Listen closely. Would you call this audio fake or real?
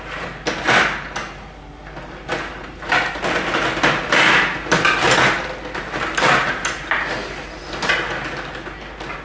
real